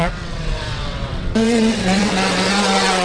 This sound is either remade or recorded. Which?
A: remade